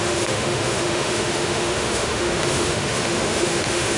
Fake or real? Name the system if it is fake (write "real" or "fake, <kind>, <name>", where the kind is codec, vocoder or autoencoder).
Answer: fake, autoencoder, DAC-VAE